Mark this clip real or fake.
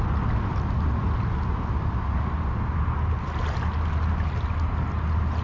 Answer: real